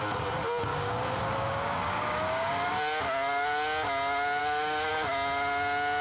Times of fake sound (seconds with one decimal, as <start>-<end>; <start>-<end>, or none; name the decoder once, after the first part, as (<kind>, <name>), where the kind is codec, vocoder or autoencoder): 0.7-2.7 (codec, DAC); 4.4-4.9